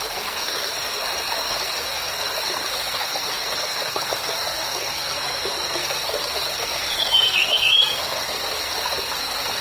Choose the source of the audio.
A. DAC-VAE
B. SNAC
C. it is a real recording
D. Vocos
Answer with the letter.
B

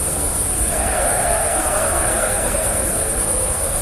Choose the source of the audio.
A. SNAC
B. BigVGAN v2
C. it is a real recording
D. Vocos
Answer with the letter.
A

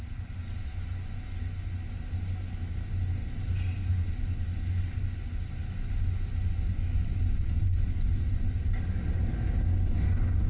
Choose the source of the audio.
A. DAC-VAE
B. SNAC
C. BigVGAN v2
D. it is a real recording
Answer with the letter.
D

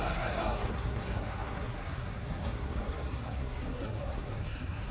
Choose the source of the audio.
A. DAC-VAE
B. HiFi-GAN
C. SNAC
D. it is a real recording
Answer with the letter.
C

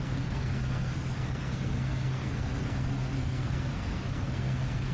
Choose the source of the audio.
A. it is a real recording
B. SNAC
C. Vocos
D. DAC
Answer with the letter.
B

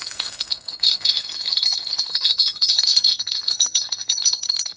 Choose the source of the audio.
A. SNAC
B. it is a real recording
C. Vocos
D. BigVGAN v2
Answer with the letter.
A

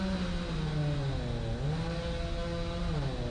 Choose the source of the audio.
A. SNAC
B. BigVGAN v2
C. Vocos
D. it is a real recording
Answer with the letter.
D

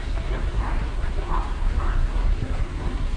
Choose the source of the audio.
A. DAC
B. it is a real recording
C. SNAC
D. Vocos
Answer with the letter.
C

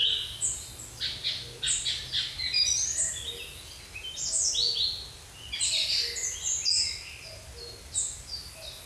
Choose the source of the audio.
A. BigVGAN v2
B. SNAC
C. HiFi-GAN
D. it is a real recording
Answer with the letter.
D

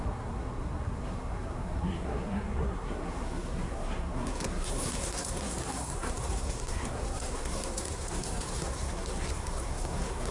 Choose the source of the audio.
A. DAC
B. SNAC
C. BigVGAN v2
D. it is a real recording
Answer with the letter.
B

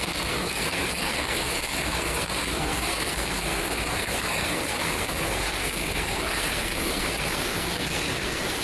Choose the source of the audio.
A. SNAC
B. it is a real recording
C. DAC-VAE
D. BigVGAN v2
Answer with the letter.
A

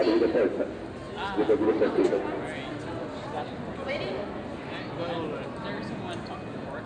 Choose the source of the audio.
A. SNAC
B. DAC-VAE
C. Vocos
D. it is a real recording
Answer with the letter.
D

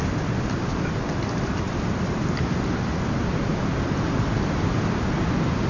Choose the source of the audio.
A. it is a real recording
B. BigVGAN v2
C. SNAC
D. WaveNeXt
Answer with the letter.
A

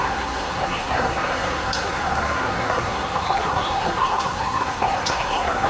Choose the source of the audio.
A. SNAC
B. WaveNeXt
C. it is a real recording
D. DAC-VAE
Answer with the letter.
A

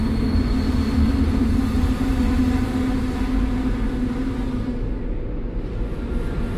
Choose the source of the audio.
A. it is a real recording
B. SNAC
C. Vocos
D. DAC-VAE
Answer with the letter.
A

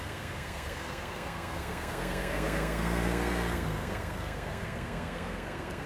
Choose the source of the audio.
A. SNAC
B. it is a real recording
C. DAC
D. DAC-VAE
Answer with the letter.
A